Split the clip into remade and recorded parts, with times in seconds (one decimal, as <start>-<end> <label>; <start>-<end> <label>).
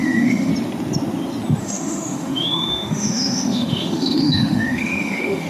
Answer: 0.0-0.5 remade; 0.5-1.6 recorded; 1.6-5.5 remade